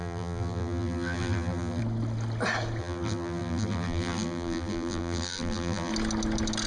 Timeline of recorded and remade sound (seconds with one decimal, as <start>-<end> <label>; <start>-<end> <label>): 0.0-1.8 remade; 1.8-2.8 recorded; 2.8-5.9 remade; 5.9-6.7 recorded